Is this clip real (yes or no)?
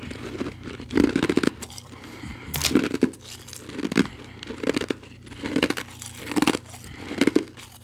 yes